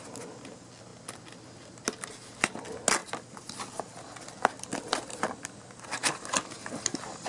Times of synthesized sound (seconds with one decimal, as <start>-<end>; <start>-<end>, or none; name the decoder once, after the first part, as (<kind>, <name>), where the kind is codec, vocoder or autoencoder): 3.0-5.2 (vocoder, BigVGAN v2)